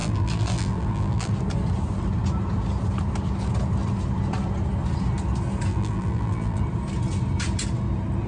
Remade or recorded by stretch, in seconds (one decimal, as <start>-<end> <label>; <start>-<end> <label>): 0.0-1.3 remade; 1.3-5.7 recorded; 5.7-6.6 remade; 6.6-8.3 recorded